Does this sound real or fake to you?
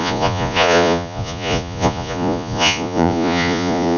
fake